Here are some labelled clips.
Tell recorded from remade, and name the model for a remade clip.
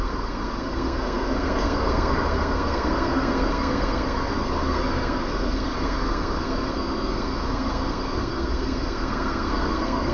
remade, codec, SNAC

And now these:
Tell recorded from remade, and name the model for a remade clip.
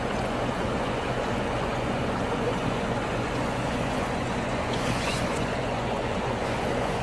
remade, vocoder, Vocos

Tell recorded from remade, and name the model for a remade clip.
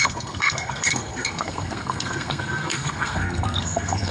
remade, codec, SNAC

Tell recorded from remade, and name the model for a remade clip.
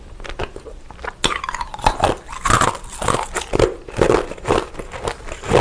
recorded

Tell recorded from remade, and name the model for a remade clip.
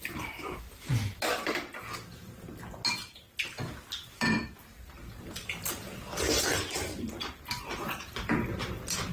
recorded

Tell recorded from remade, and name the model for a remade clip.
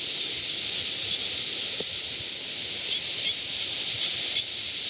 recorded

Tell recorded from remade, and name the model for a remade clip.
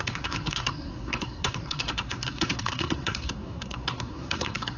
remade, codec, SNAC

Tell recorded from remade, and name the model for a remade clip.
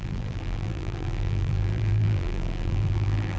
remade, vocoder, BigVGAN v2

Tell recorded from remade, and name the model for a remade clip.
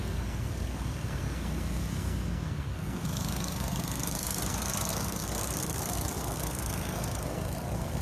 remade, codec, SNAC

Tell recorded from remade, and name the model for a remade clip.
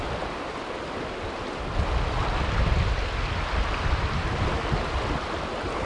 recorded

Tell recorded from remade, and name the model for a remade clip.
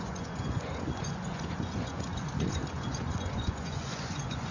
remade, vocoder, Vocos